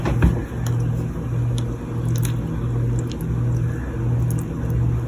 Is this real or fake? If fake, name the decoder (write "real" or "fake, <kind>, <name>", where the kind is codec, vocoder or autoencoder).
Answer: real